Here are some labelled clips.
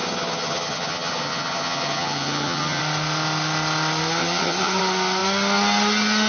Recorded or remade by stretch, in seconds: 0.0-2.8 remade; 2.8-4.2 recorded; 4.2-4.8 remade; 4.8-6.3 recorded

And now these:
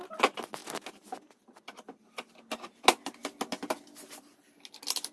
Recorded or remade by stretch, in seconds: 0.0-5.1 recorded